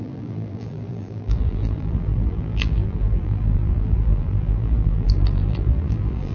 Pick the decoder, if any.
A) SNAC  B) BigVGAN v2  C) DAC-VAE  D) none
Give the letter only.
B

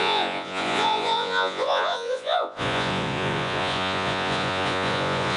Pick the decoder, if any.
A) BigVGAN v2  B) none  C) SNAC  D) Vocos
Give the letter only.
D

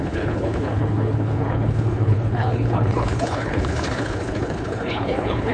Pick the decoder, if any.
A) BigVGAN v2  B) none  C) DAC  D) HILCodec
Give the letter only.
D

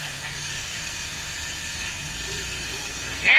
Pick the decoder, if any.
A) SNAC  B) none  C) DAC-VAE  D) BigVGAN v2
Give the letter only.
A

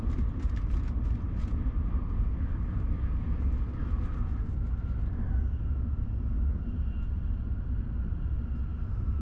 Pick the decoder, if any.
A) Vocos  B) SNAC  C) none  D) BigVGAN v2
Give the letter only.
C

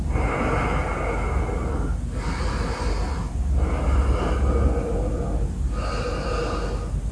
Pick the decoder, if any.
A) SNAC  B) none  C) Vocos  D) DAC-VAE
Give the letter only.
B